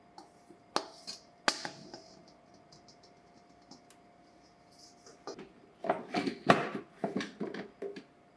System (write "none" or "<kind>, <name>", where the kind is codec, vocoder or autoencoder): none